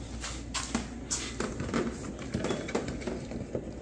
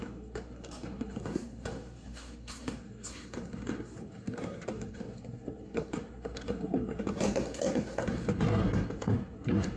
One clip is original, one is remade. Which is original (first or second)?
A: first